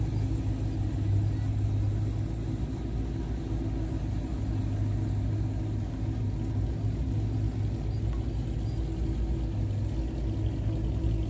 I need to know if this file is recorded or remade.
recorded